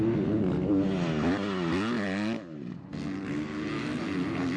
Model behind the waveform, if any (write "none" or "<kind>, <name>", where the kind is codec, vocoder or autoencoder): none